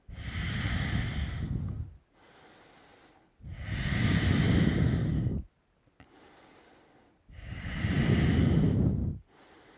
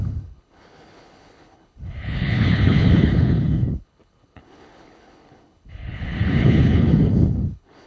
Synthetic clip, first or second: second